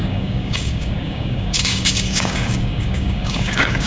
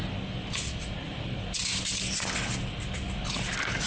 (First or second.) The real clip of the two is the second